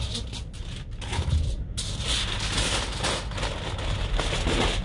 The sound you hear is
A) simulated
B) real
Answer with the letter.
B